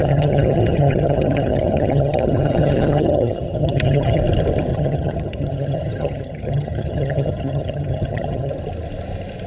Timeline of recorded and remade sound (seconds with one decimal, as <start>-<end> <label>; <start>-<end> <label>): 0.0-4.2 remade; 4.2-4.7 recorded; 4.7-8.5 remade; 8.5-9.5 recorded